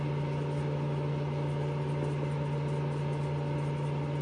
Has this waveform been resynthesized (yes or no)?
no